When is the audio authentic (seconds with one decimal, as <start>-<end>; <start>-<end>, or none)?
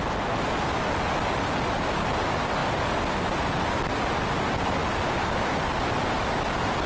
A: 0.0-6.9